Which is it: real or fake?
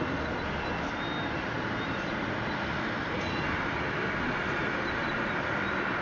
real